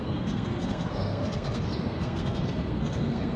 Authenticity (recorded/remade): remade